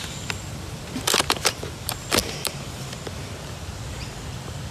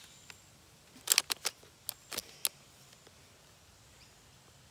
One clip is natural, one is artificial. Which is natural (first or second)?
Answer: second